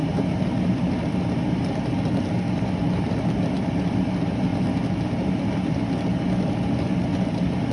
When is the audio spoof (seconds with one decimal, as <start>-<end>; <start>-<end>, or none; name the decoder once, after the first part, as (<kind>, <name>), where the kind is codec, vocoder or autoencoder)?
none